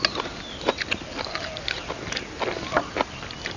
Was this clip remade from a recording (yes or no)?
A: no